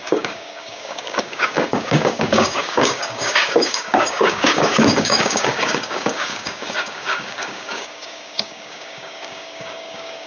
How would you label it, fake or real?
fake